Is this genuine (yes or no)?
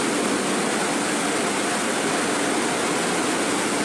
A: yes